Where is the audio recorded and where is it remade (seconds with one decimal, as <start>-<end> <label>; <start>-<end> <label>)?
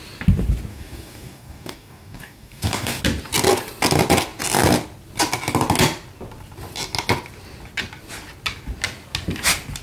0.0-0.7 recorded; 0.7-3.0 remade; 3.0-9.8 recorded